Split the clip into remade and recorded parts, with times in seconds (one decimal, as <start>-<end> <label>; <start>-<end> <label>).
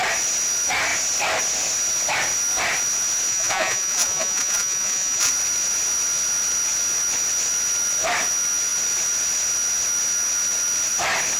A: 0.0-3.3 recorded; 3.3-5.3 remade; 5.3-11.4 recorded